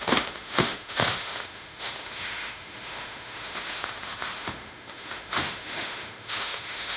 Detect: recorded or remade remade